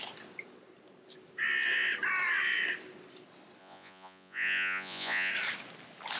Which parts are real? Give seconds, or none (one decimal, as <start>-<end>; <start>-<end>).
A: 0.0-3.6; 5.3-6.2